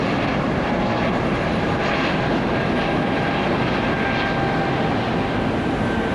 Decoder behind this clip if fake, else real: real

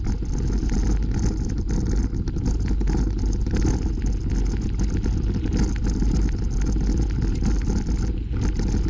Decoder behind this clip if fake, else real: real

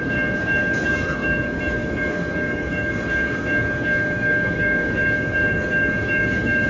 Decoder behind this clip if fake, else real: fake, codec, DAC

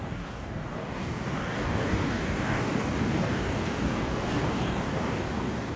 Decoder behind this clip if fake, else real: fake, codec, DAC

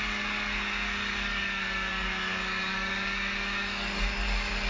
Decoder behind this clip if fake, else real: fake, codec, DAC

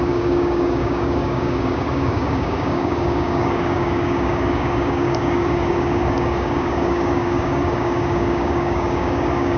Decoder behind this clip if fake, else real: fake, codec, DAC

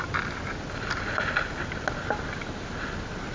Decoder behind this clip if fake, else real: real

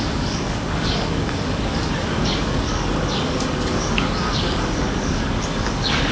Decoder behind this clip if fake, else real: fake, codec, DAC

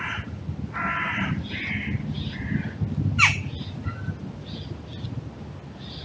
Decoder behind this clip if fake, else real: real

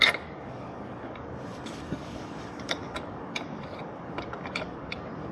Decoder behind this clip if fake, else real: fake, codec, DAC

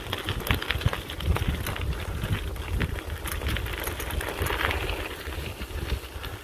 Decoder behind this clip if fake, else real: real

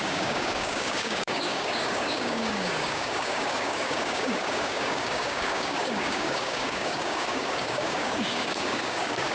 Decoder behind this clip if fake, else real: fake, codec, DAC